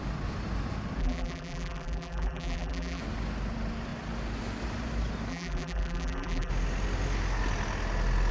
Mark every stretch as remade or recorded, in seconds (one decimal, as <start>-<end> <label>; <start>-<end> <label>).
0.0-1.0 recorded; 1.0-3.0 remade; 3.0-5.3 recorded; 5.3-6.5 remade; 6.5-8.3 recorded